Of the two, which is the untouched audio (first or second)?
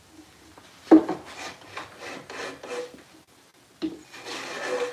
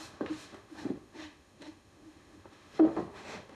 first